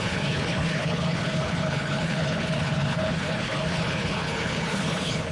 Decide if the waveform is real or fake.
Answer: fake